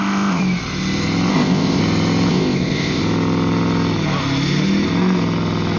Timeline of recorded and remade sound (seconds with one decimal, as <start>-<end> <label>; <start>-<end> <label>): 0.0-0.4 remade; 0.4-1.3 recorded; 1.3-1.8 remade; 1.8-2.3 recorded; 2.3-3.0 remade; 3.0-5.8 recorded